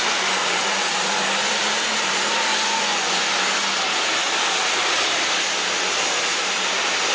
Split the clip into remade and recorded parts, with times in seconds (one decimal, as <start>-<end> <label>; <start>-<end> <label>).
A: 0.0-0.4 recorded; 0.4-1.2 remade; 1.2-2.5 recorded; 2.5-3.3 remade; 3.3-7.1 recorded